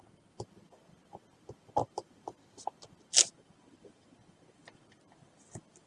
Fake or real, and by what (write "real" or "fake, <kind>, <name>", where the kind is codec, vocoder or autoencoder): real